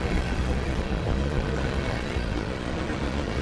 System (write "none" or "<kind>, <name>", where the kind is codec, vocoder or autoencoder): vocoder, Vocos